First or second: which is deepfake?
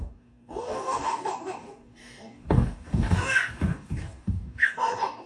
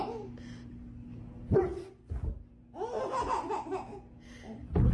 first